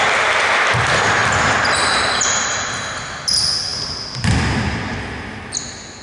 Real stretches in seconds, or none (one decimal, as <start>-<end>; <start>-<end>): 0.0-1.2; 2.4-3.7; 4.4-6.0